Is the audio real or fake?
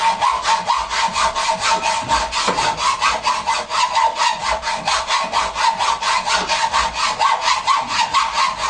real